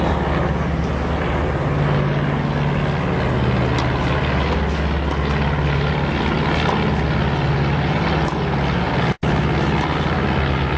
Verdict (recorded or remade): recorded